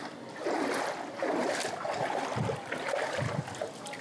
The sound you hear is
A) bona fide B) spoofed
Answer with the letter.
A